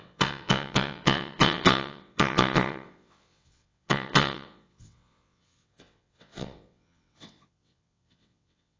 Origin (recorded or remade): remade